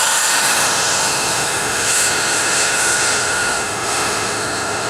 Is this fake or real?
fake